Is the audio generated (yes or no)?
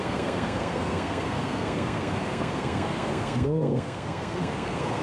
yes